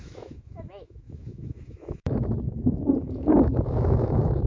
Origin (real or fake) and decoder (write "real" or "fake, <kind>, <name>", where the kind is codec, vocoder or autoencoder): fake, autoencoder, DAC-VAE